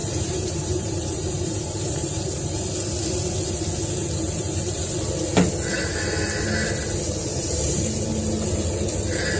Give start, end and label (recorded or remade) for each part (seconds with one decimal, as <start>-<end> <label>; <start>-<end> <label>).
0.0-2.6 remade; 2.6-4.0 recorded; 4.0-4.9 remade; 4.9-7.3 recorded; 7.3-8.1 remade; 8.1-9.4 recorded